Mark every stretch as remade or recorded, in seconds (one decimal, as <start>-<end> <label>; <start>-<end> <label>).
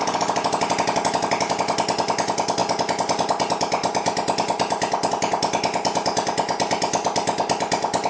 0.0-8.1 recorded